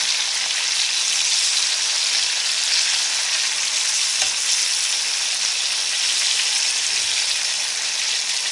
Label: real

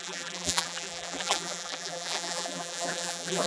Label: fake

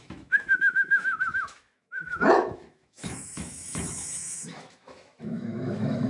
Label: fake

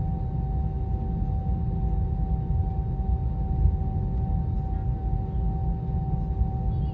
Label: real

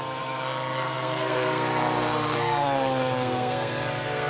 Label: fake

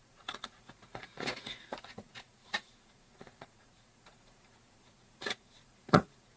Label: fake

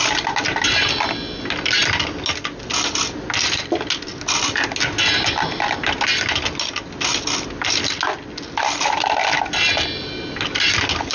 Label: real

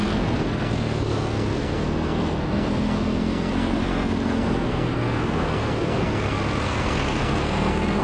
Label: fake